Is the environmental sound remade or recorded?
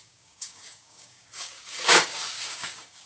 remade